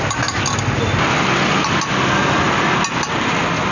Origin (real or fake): real